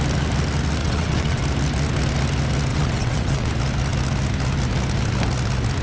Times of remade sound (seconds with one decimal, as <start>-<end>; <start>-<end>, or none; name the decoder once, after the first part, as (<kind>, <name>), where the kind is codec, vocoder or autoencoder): 0.8-1.4 (vocoder, WaveNeXt); 2.7-3.5